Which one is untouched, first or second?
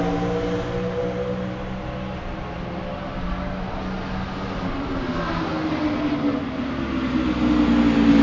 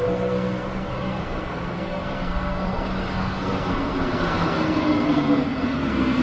first